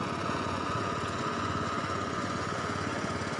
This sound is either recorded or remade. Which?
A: remade